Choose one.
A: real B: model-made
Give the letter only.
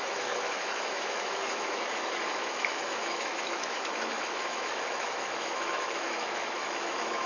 B